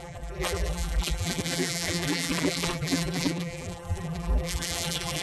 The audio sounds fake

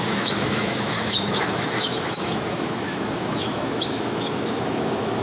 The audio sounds fake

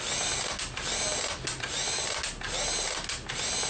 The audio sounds real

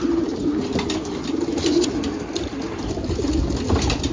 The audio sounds real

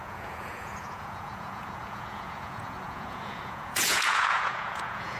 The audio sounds fake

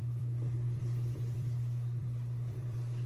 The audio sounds fake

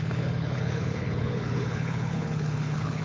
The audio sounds fake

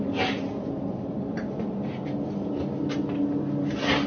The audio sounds real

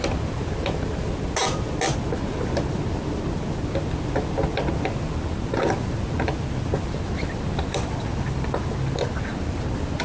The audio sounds real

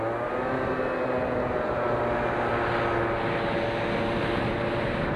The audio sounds real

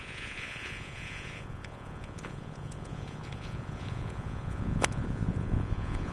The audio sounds fake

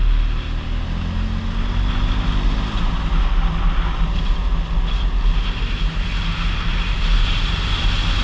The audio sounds real